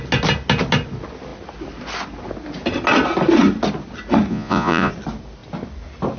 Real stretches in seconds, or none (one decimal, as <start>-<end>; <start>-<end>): 0.0-4.3; 4.9-6.2